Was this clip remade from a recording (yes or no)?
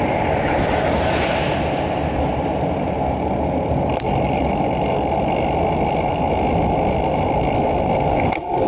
no